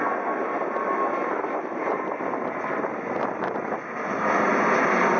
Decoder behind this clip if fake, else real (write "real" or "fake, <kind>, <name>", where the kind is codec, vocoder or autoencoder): real